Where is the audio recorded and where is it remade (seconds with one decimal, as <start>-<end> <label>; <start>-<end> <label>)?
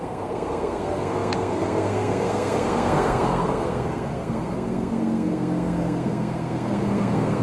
0.0-7.4 remade